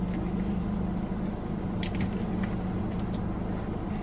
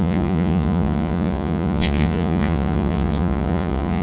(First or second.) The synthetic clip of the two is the second